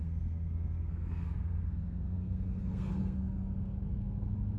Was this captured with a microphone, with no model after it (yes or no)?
no